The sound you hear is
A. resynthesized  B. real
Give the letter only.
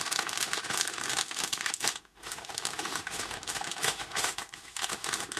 A